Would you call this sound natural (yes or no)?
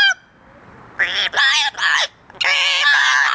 yes